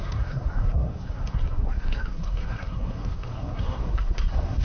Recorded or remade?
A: remade